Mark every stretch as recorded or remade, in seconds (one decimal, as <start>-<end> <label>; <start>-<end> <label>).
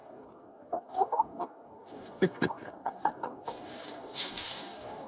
0.0-5.1 remade